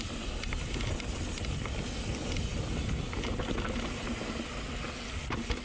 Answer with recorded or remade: recorded